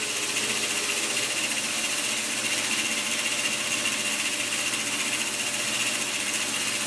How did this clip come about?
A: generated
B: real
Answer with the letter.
B